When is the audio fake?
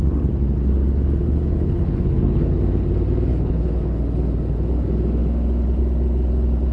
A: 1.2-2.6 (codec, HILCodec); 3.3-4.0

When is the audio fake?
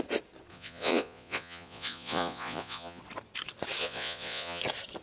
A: 0.5-3.0 (vocoder, Vocos); 3.8-4.6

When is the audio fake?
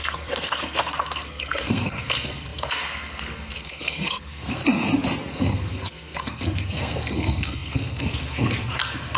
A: 0.0-4.6 (codec, SNAC); 5.3-9.2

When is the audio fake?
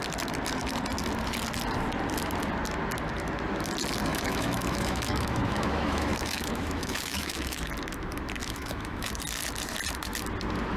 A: 4.1-7.7 (autoencoder, DAC-VAE); 8.4-9.1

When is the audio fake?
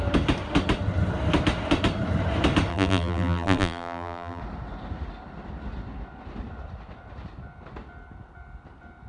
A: 2.7-4.4 (vocoder, BigVGAN v2)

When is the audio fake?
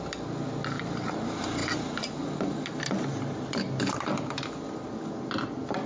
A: none